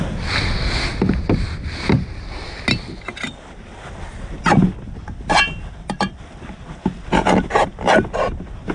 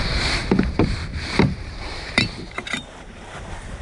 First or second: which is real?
first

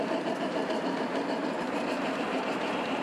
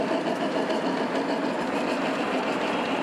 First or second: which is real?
second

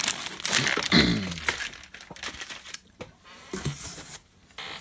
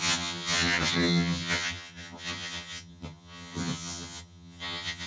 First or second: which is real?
first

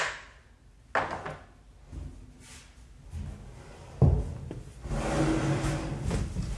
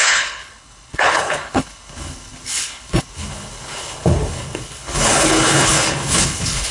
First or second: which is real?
first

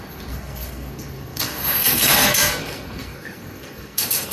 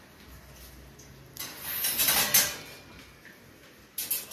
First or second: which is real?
second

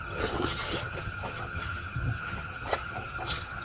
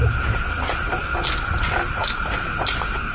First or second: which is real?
second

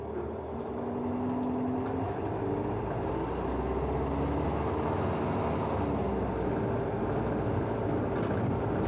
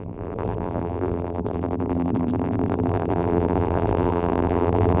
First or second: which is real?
first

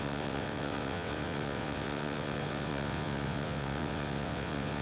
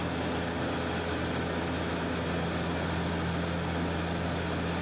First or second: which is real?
second